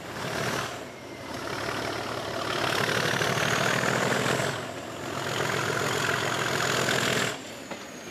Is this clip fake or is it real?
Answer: real